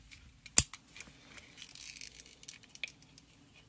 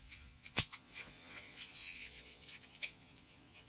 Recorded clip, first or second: first